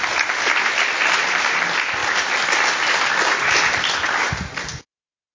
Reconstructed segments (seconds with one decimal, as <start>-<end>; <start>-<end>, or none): none